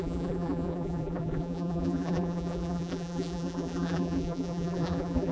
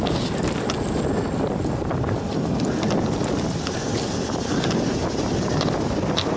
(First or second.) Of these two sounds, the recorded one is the second